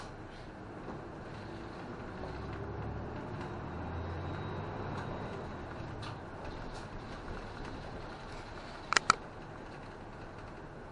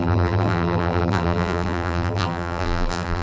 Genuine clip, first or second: first